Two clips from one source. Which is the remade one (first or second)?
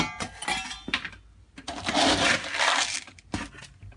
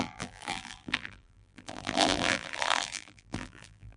second